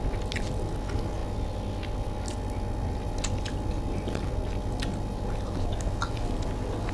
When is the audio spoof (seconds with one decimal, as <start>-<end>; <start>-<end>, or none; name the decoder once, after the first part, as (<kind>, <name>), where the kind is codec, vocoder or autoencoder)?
none